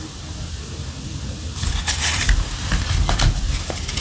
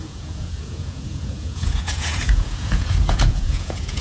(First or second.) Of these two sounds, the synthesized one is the second